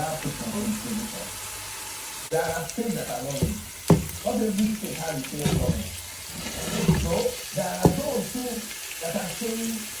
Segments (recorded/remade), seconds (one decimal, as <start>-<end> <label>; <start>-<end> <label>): 0.0-10.0 recorded